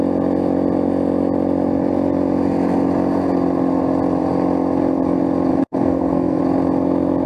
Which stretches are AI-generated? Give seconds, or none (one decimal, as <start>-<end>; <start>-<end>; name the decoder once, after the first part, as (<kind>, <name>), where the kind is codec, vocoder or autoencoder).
5.5-6.4 (codec, SNAC)